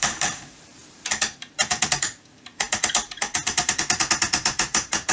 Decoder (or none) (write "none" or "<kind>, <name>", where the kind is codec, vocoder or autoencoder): vocoder, BigVGAN v2